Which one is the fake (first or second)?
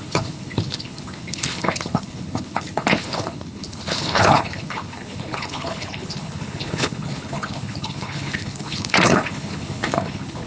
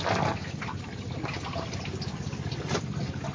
first